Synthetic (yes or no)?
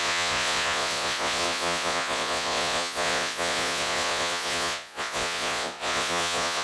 yes